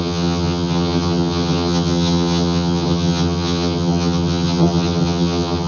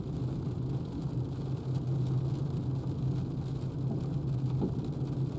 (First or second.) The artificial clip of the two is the first